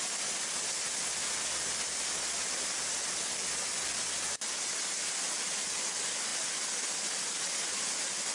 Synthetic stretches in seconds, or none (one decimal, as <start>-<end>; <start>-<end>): none